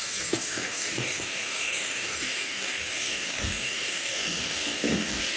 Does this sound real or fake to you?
fake